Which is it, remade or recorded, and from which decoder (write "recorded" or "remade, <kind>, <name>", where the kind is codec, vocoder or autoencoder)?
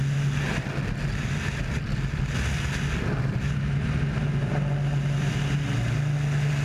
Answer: recorded